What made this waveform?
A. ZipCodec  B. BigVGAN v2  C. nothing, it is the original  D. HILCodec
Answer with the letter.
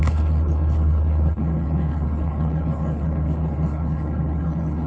D